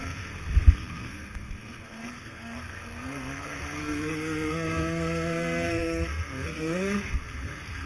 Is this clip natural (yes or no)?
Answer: no